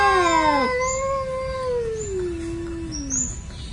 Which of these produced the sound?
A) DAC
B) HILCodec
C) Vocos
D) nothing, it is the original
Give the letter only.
D